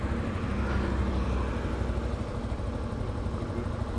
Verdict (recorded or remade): recorded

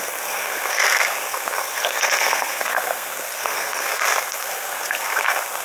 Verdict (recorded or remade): remade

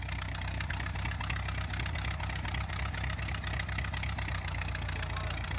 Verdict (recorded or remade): recorded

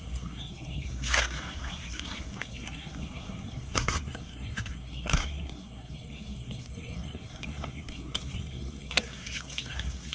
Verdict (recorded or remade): remade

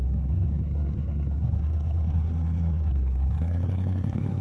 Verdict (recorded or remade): remade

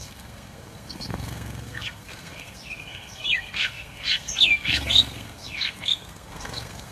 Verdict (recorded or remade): remade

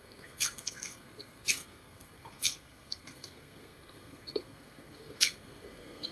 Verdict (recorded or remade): remade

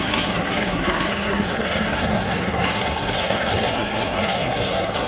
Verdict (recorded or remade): remade